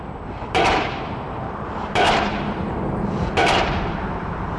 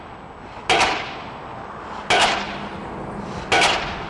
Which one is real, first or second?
second